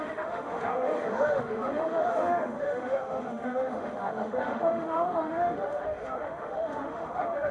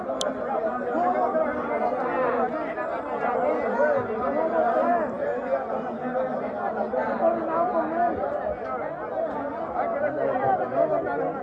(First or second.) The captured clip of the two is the second